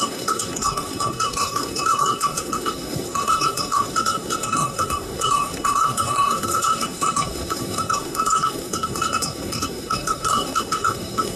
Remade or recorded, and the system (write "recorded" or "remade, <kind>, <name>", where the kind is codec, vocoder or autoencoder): remade, codec, SNAC